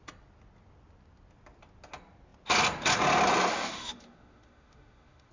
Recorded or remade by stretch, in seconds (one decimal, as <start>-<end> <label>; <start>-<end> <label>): 0.0-3.5 recorded; 3.5-5.3 remade